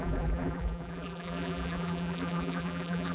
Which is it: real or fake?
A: fake